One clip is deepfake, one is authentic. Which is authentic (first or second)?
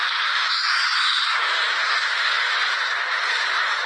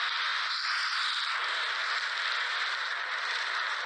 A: second